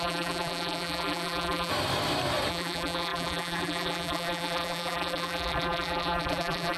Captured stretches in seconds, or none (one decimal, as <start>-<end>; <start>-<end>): 1.7-2.5